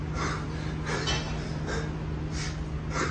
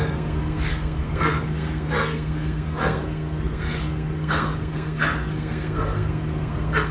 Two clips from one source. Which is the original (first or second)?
first